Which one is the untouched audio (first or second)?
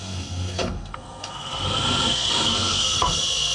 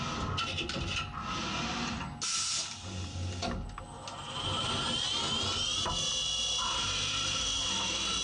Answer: second